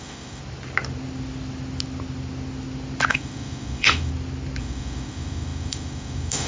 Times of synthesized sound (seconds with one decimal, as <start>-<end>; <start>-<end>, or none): 0.0-0.4; 3.1-4.1; 4.6-6.5